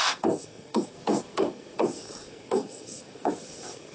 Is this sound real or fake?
fake